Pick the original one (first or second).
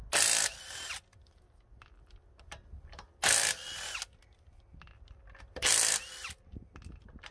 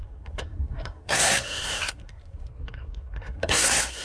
first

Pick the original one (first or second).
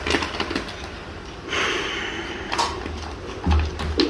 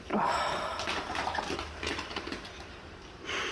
first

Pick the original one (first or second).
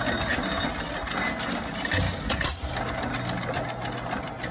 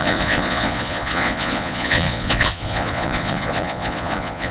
first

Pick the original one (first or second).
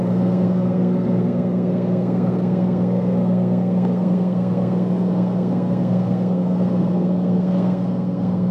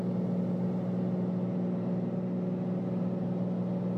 second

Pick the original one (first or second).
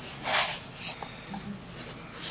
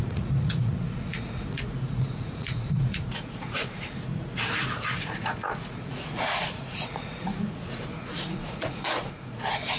first